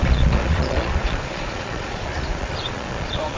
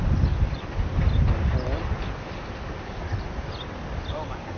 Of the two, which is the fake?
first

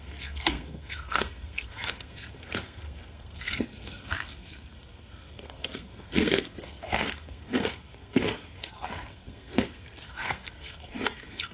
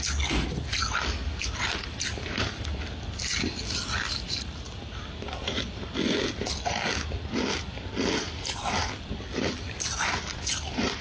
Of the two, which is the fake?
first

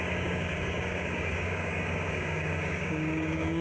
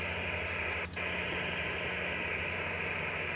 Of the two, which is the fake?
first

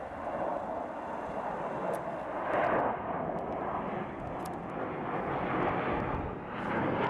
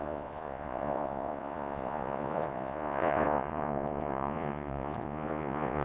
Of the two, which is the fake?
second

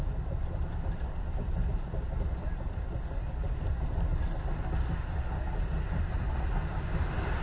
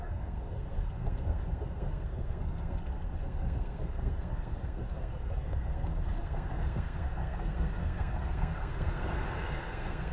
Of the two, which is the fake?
second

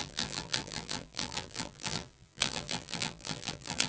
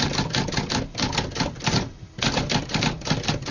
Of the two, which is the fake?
first